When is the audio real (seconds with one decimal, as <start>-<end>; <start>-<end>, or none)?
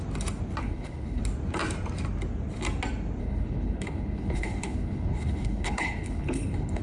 0.0-0.6; 1.2-3.2